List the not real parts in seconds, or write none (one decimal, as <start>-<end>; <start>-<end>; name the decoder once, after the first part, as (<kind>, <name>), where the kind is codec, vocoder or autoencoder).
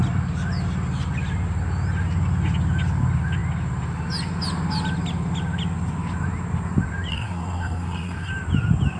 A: 7.1-8.3 (codec, SNAC)